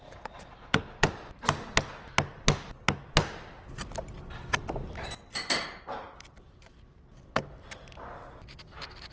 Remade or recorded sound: recorded